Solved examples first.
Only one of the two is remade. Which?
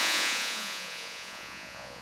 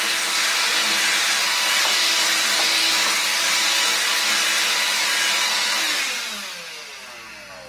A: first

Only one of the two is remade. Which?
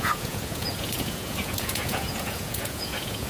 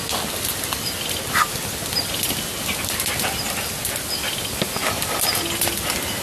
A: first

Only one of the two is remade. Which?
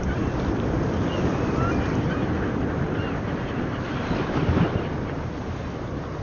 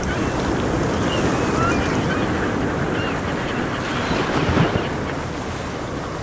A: first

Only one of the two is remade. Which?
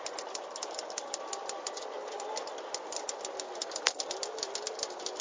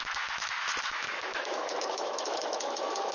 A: second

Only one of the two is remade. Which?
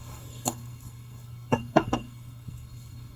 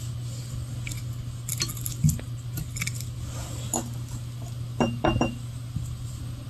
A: first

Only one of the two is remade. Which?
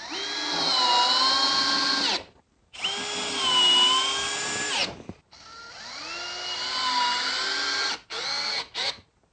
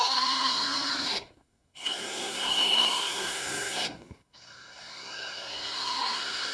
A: second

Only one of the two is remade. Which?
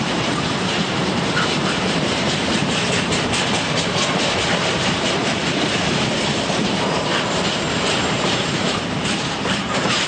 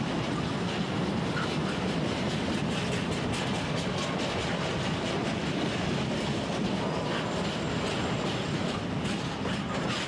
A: first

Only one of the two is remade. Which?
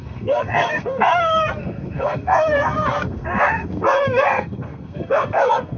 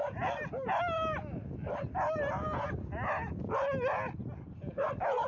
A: first